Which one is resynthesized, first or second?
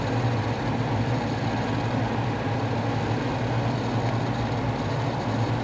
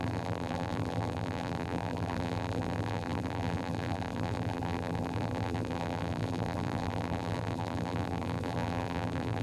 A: second